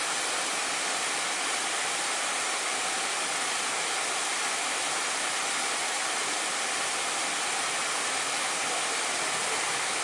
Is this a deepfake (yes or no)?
no